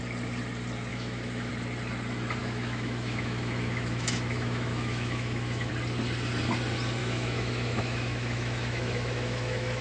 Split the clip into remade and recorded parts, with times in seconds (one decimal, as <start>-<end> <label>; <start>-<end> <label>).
0.0-0.9 recorded; 0.9-1.5 remade; 1.5-2.4 recorded; 2.4-5.7 remade; 5.7-7.0 recorded; 7.0-9.8 remade